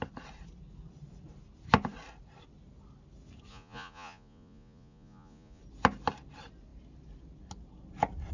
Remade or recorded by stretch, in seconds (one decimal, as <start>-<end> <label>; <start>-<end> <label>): 0.0-3.5 recorded; 3.5-5.6 remade; 5.6-8.3 recorded